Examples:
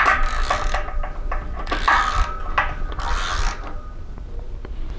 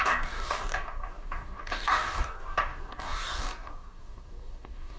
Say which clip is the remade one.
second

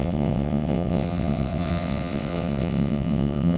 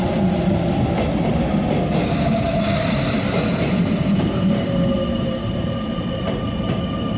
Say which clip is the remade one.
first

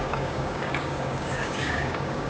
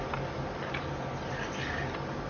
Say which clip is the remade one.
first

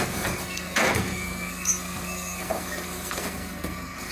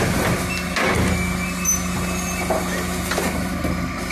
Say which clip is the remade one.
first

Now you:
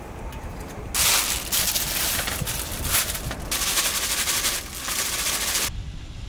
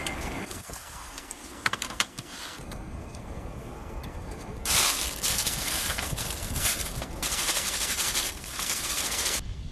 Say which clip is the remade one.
second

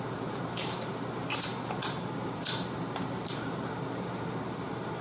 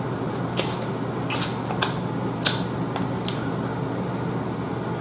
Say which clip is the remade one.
first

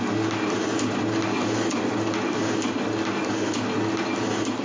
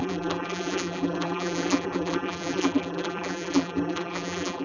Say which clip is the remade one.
second